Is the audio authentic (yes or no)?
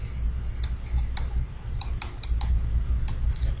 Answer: yes